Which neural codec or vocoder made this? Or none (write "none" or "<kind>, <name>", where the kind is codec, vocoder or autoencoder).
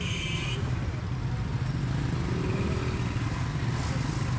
none